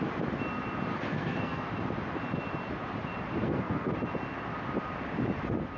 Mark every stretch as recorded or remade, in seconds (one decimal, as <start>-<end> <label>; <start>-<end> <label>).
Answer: 0.0-1.1 recorded; 1.1-1.7 remade; 1.7-3.4 recorded; 3.4-3.9 remade; 3.9-5.8 recorded